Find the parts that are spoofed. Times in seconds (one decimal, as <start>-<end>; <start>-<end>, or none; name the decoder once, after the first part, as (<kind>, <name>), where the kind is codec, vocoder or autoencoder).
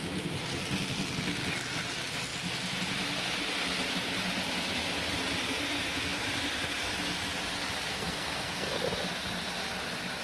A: 7.9-8.8 (codec, SNAC)